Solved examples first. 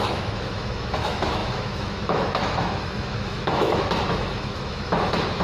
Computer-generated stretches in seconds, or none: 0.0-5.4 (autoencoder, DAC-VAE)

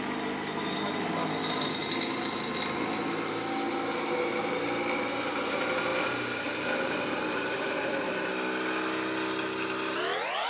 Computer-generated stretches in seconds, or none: 5.9-8.3 (vocoder, BigVGAN v2)

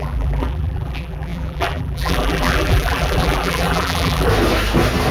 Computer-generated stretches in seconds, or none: 0.0-4.3 (vocoder, BigVGAN v2)

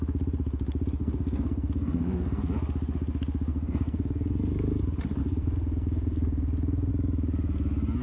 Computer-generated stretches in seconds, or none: 1.0-2.4 (codec, SNAC); 3.5-4.8; 5.2-6.9